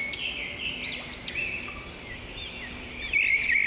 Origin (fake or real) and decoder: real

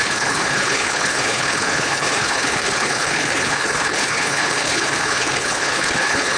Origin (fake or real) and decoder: fake, codec, HILCodec